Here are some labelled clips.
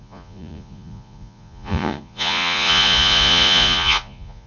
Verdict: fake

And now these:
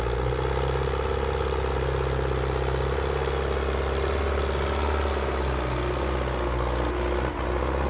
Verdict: real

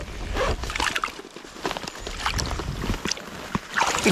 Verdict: real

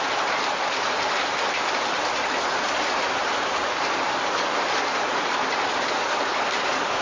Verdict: real